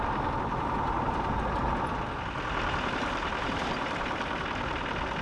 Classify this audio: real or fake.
real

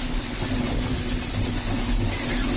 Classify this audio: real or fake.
real